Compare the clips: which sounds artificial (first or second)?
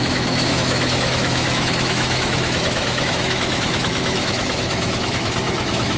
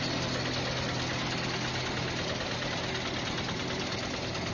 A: first